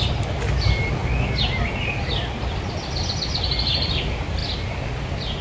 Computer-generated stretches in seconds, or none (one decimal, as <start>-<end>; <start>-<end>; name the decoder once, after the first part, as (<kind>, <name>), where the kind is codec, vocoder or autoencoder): none